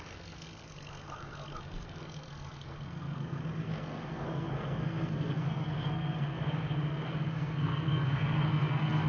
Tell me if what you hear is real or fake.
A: fake